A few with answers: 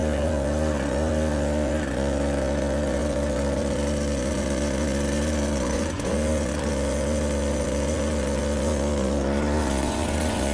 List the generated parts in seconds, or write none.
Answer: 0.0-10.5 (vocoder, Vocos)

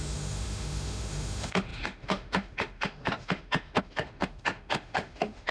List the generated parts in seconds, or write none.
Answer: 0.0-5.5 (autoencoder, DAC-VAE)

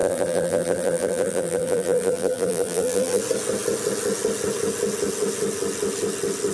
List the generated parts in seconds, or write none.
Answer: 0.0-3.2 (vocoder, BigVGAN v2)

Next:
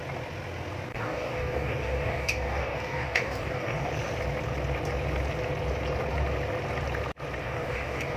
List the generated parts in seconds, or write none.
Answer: 0.9-3.9 (codec, DAC); 7.4-8.2